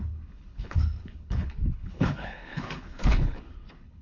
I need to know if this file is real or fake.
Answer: fake